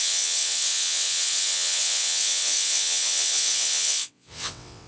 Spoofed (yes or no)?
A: yes